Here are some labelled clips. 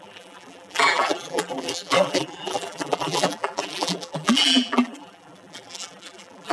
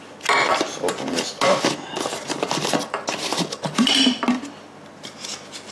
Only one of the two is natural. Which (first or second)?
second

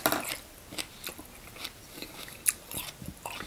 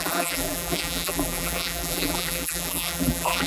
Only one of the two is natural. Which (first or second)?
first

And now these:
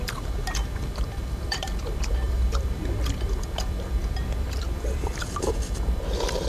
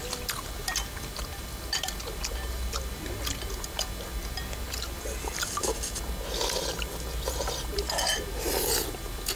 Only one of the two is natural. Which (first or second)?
second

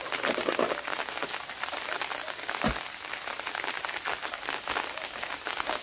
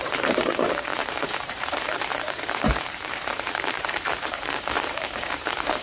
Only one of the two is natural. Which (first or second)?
first